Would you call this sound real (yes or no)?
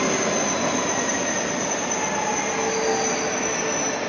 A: yes